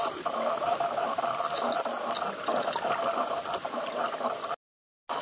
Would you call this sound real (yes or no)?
yes